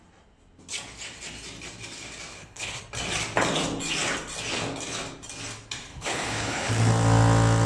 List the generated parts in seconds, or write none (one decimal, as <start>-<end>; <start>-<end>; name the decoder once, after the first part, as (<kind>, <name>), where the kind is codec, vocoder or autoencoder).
2.3-2.8 (codec, HILCodec); 5.9-6.7